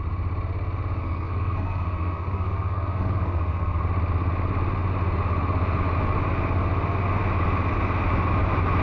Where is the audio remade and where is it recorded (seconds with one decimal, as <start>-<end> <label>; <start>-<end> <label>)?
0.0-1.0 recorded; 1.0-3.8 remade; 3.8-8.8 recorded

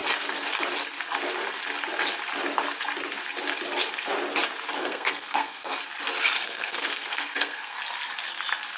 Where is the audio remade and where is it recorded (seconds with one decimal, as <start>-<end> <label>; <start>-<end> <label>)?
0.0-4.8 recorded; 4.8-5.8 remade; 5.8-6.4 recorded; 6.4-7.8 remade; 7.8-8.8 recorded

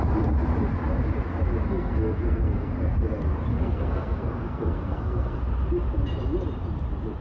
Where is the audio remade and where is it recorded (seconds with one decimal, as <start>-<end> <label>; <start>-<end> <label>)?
0.0-1.6 recorded; 1.6-2.7 remade; 2.7-3.5 recorded; 3.5-5.4 remade; 5.4-7.2 recorded

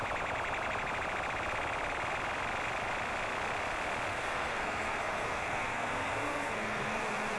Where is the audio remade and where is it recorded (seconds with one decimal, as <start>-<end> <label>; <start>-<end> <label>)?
0.0-4.1 recorded; 4.1-7.0 remade; 7.0-7.4 recorded

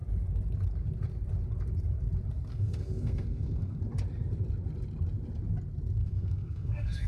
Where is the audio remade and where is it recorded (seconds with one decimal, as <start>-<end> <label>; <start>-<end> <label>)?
0.0-2.5 recorded; 2.5-3.8 remade; 3.8-6.0 recorded; 6.0-7.1 remade

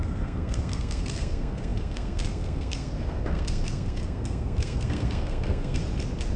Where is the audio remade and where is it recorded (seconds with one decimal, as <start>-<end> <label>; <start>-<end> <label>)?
0.0-5.8 remade; 5.8-6.4 recorded

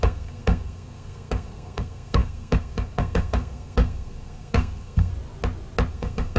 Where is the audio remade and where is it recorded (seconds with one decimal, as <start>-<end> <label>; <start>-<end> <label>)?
0.0-5.1 remade; 5.1-5.9 recorded; 5.9-6.4 remade